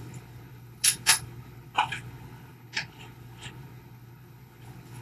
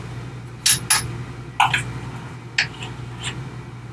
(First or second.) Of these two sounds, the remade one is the first